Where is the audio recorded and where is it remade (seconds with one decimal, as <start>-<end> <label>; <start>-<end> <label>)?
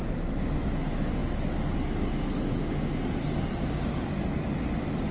0.0-5.1 recorded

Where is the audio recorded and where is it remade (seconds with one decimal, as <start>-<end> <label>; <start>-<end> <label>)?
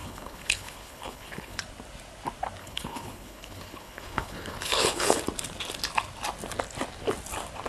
0.0-1.6 remade; 1.6-2.6 recorded; 2.6-5.2 remade; 5.2-7.7 recorded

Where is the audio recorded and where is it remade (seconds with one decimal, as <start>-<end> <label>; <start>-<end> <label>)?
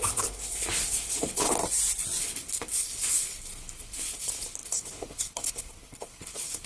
0.0-1.6 remade; 1.6-2.2 recorded; 2.2-6.7 remade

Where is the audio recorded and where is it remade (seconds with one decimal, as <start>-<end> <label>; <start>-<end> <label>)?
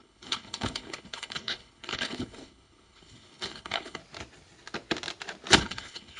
0.0-4.0 remade; 4.0-5.6 recorded; 5.6-6.2 remade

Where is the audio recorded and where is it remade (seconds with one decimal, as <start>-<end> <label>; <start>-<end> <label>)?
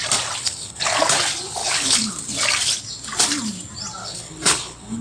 0.0-0.4 recorded; 0.4-1.0 remade; 1.0-1.6 recorded; 1.6-2.1 remade; 2.1-4.0 recorded; 4.0-5.0 remade